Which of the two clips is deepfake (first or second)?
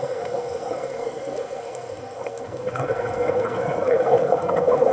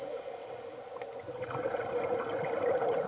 first